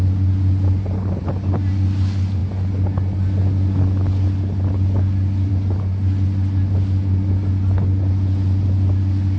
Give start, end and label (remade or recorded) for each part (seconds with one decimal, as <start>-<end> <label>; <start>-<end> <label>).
0.0-9.4 recorded